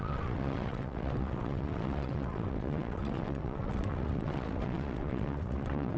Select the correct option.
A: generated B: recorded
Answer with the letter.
A